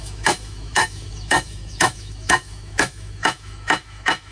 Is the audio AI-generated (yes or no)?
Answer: yes